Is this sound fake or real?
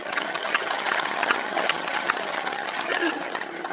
fake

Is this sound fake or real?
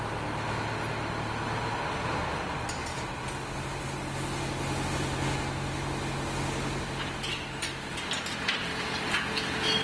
real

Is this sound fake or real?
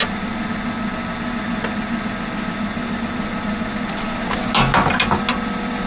real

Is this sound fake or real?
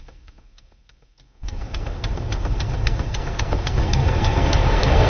fake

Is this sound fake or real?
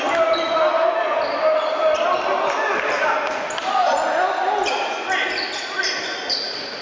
real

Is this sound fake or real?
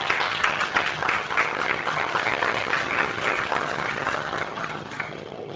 fake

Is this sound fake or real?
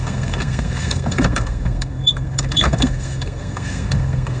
fake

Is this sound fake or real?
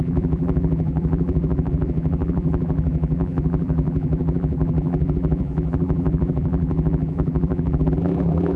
fake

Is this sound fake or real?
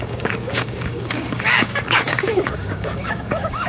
fake